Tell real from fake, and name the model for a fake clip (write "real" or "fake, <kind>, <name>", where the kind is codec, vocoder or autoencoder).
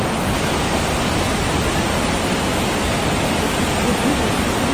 real